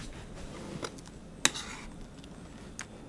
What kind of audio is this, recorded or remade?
recorded